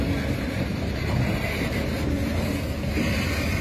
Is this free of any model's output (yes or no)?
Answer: yes